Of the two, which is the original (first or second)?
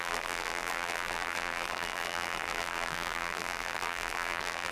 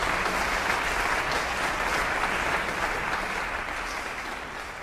second